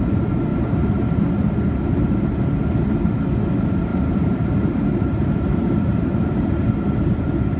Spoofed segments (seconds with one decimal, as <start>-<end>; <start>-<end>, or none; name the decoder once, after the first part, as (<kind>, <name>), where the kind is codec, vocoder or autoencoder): 0.5-1.3 (vocoder, BigVGAN v2); 3.9-6.7